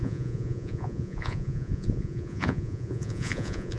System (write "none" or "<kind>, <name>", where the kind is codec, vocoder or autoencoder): vocoder, Vocos